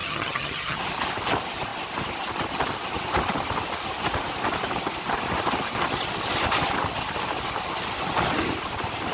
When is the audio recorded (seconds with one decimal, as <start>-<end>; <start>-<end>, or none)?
0.8-9.1